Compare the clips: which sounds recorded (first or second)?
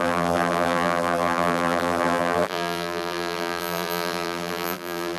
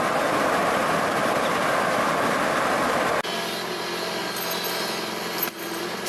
second